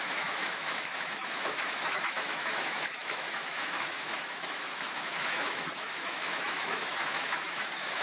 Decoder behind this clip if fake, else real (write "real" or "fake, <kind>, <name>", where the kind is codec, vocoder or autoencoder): fake, autoencoder, DAC-VAE